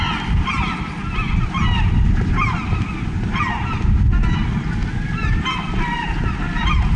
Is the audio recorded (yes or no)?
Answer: yes